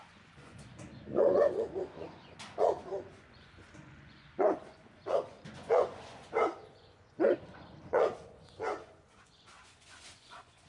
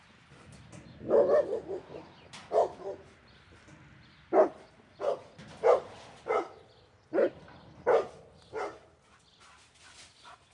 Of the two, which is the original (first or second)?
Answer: second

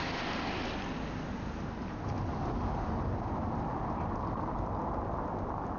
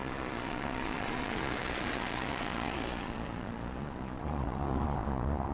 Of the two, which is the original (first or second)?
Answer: first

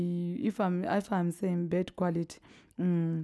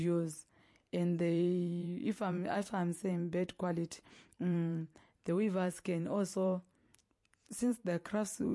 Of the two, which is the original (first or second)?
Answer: first